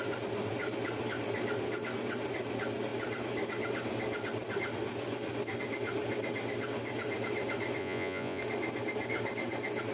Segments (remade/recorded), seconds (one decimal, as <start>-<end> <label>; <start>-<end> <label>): 0.0-7.8 recorded; 7.8-8.4 remade; 8.4-9.9 recorded